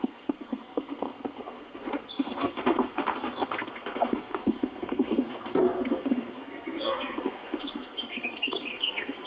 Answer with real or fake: fake